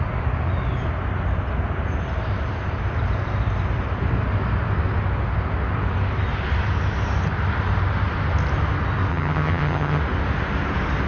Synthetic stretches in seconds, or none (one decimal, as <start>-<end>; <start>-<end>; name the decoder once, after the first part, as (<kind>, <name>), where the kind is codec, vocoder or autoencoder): 9.1-10.0 (vocoder, HiFi-GAN)